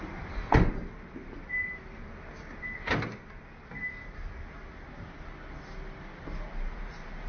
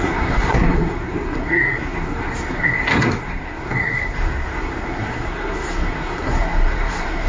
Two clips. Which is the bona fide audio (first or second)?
first